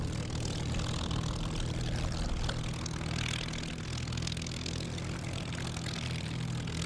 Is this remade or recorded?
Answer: recorded